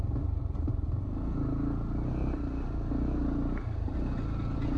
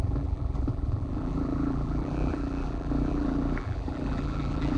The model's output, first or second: second